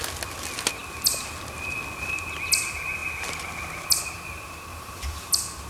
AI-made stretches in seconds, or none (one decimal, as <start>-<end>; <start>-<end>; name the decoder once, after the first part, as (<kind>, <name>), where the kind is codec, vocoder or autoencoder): 4.7-5.3 (vocoder, BigVGAN v2)